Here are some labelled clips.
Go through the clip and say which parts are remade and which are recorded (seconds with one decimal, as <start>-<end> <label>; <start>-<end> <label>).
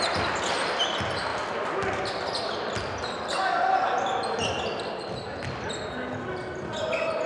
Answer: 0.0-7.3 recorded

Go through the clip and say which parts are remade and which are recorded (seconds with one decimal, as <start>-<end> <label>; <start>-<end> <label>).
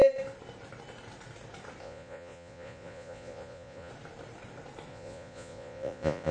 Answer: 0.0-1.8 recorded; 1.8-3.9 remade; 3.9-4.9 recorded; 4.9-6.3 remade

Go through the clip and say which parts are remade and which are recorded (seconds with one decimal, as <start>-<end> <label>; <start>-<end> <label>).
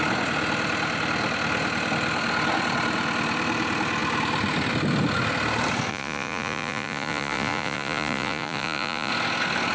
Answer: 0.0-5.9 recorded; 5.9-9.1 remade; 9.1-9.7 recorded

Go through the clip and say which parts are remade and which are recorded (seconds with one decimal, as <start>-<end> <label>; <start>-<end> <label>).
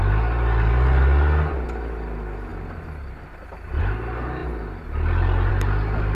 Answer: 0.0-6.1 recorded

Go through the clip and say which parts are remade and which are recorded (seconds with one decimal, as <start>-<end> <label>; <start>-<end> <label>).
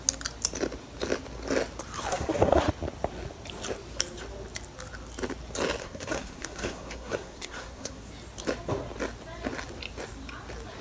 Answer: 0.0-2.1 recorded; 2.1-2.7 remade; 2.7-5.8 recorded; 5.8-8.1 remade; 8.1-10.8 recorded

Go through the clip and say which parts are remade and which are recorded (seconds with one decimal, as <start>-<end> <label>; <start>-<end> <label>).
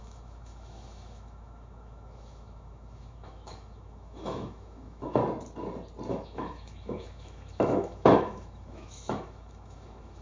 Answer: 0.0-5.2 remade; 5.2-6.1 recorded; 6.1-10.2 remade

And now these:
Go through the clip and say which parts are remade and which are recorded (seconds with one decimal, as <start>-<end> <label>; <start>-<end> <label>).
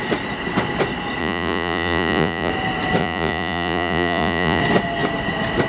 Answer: 0.0-1.2 recorded; 1.2-2.5 remade; 2.5-3.0 recorded; 3.0-4.6 remade; 4.6-5.7 recorded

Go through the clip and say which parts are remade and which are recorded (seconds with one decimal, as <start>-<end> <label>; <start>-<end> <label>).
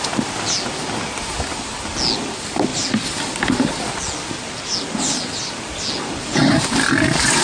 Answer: 0.0-7.4 recorded